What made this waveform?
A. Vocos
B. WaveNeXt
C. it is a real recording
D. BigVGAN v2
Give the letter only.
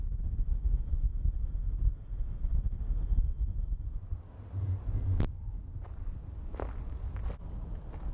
C